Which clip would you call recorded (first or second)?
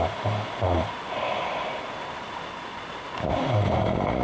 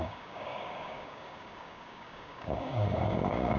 first